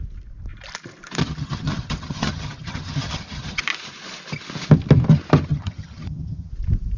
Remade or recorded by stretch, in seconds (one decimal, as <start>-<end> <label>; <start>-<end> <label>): 0.0-1.2 recorded; 1.2-3.6 remade; 3.6-5.5 recorded; 5.5-6.5 remade; 6.5-7.0 recorded